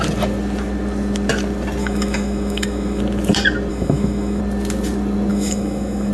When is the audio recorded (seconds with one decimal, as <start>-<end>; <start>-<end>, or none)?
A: 0.0-1.8; 3.0-3.7; 4.4-5.3